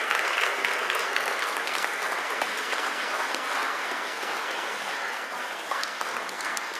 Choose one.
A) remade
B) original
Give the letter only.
A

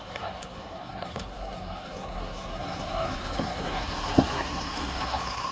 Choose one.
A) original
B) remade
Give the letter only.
B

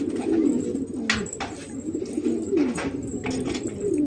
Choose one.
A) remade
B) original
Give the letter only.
B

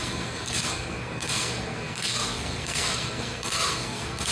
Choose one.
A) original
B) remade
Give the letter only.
B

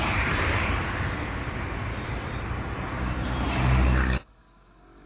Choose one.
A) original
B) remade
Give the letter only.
A